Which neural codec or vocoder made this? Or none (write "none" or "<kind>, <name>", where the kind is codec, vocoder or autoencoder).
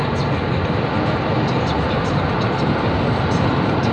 none